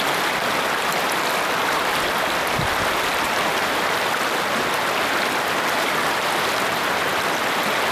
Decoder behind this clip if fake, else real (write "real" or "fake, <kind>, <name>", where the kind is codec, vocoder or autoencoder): real